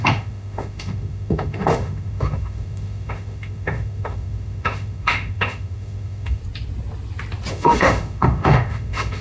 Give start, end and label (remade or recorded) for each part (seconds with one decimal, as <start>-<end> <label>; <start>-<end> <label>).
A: 0.0-6.4 remade; 6.4-7.5 recorded; 7.5-9.2 remade